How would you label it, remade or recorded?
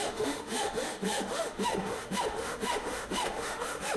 remade